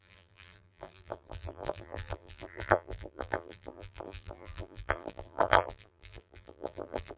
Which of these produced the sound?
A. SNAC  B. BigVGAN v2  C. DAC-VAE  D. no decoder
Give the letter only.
B